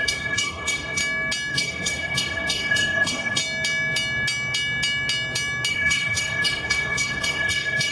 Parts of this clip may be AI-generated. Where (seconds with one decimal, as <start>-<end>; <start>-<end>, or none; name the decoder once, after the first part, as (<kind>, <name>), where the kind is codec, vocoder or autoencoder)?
0.0-1.0 (codec, SNAC); 1.5-3.4; 5.7-7.9